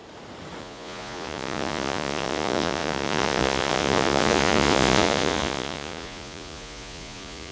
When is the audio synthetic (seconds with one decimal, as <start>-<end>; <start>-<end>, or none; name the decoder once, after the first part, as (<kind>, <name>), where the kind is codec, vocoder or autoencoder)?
0.6-7.5 (vocoder, Vocos)